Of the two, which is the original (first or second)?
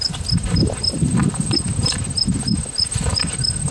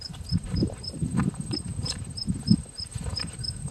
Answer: first